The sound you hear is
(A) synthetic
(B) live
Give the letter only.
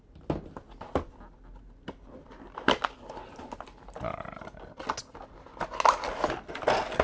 B